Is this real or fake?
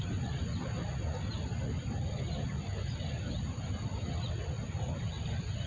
real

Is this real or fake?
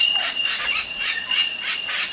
fake